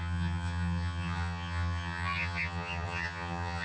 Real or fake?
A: fake